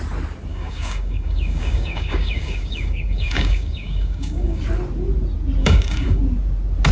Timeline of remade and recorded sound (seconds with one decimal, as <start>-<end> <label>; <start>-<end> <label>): 0.0-0.5 recorded; 0.5-4.6 remade; 4.6-5.6 recorded; 5.6-6.2 remade; 6.2-6.9 recorded

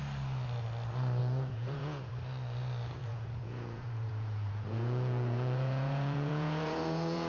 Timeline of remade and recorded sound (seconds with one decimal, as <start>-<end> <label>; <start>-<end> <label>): 0.0-1.2 recorded; 1.2-2.1 remade; 2.1-3.0 recorded; 3.0-7.3 remade

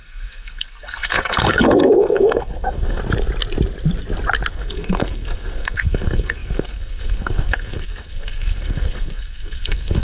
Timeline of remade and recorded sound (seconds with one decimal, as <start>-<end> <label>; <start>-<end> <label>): 0.0-3.0 remade; 3.0-4.5 recorded; 4.5-10.0 remade

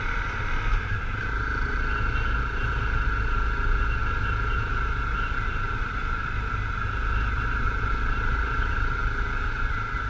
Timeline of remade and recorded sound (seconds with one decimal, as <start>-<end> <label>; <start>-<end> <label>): 0.0-4.0 recorded; 4.0-6.5 remade; 6.5-10.1 recorded

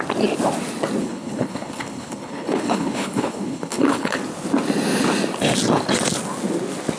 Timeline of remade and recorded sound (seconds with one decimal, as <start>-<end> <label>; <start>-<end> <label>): 0.0-1.0 recorded; 1.0-4.2 remade; 4.2-7.0 recorded

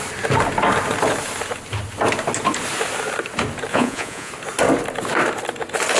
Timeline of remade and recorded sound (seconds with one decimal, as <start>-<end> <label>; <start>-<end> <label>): 0.0-3.7 recorded; 3.7-4.3 remade; 4.3-6.0 recorded

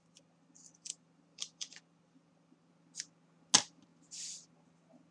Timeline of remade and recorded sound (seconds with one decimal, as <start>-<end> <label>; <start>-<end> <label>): 0.0-2.7 remade; 2.7-5.1 recorded

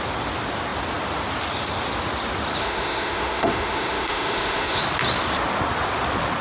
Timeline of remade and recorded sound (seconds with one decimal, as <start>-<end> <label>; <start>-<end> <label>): 0.0-2.6 recorded; 2.6-4.8 remade; 4.8-6.4 recorded